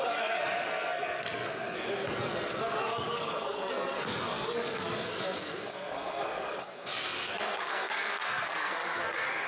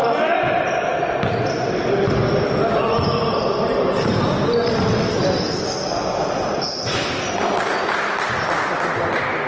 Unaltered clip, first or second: second